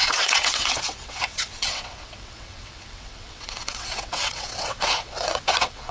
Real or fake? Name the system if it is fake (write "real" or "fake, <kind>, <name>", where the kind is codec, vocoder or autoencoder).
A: fake, vocoder, WaveNeXt